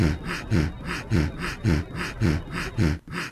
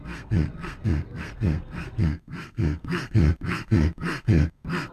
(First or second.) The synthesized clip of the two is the second